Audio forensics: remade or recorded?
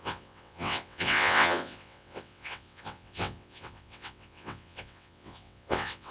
remade